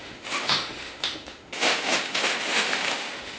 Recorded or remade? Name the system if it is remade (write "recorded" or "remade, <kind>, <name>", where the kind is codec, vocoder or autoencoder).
remade, autoencoder, DAC-VAE